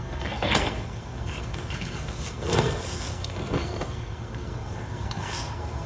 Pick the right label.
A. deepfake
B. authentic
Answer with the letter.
A